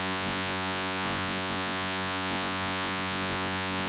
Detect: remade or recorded remade